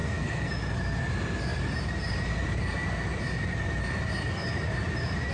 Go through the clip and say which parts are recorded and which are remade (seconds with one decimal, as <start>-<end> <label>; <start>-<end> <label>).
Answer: 0.0-0.5 remade; 0.5-5.3 recorded